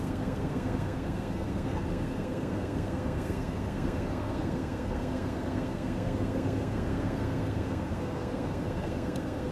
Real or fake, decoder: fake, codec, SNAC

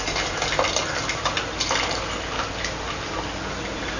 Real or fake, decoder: real